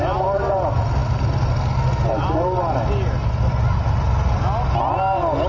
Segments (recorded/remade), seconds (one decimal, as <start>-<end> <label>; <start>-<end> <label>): 0.0-5.5 recorded